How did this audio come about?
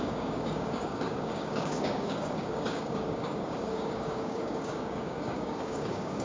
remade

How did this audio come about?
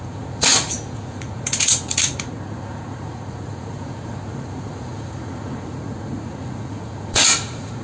remade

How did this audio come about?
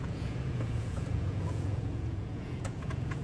remade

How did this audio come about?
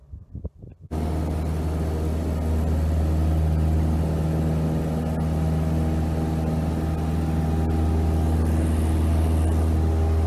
recorded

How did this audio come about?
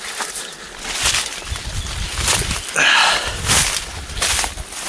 recorded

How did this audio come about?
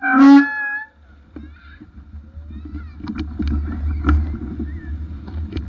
recorded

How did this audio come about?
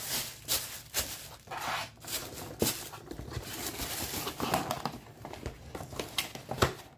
recorded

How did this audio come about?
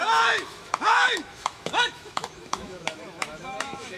remade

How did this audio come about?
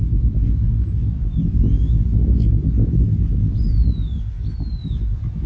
recorded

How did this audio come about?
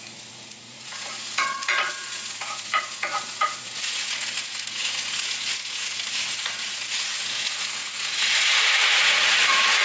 remade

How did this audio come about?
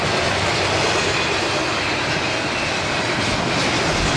recorded